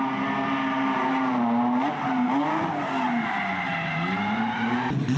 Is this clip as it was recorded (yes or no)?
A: yes